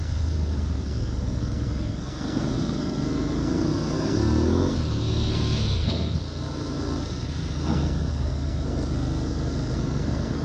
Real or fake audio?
fake